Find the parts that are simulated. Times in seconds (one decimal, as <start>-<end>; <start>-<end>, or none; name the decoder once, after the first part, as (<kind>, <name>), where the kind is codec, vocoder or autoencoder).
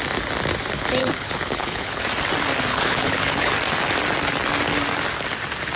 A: 1.0-2.0 (codec, HILCodec); 2.7-3.5